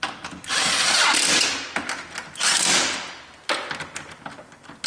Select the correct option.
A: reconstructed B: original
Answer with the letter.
B